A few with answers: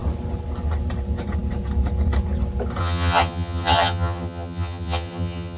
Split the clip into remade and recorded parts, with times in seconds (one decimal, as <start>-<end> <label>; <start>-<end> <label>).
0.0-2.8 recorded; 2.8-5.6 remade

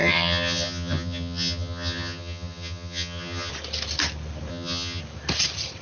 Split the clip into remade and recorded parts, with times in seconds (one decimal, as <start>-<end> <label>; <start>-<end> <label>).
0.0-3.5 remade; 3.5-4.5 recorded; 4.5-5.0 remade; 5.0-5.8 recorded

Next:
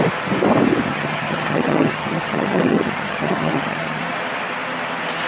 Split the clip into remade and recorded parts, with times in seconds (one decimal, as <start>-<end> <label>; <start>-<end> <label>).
0.0-0.9 recorded; 0.9-4.0 remade; 4.0-5.3 recorded

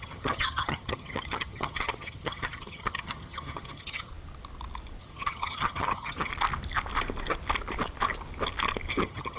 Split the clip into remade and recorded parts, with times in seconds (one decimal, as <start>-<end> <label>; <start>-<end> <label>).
0.0-4.1 remade; 4.1-5.0 recorded; 5.0-6.3 remade; 6.3-8.9 recorded; 8.9-9.4 remade

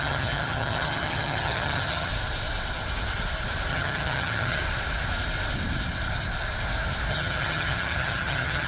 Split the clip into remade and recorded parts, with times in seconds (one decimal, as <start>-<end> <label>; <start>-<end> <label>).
0.0-2.1 remade; 2.1-3.7 recorded; 3.7-4.6 remade; 4.6-7.1 recorded; 7.1-8.7 remade